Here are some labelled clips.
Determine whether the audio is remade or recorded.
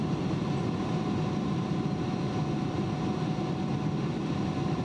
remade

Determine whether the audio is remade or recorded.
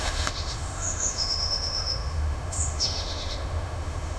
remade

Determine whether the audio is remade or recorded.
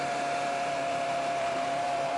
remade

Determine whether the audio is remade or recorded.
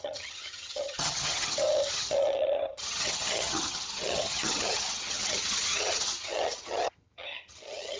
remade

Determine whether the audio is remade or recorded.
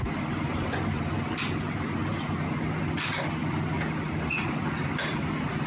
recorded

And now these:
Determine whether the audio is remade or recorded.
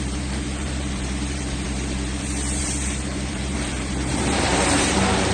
remade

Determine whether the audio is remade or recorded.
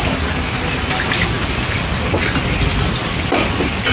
recorded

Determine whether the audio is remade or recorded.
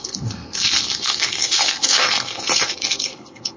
remade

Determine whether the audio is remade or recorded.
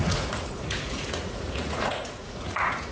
remade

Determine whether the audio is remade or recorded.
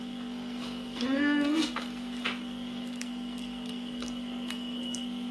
remade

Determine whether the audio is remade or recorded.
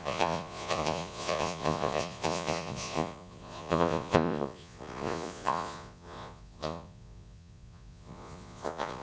remade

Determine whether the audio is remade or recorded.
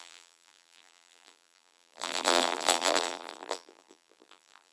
remade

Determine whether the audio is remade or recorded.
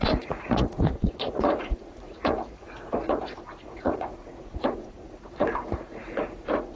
remade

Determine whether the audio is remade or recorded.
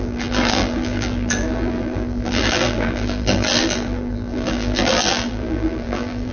remade